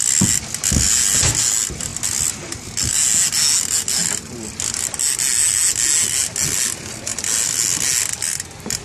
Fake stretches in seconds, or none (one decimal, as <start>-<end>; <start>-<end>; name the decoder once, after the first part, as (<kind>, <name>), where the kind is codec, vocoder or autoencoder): none

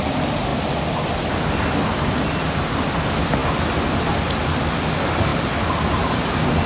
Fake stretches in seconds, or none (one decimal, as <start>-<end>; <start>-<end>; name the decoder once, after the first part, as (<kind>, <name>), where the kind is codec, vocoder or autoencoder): none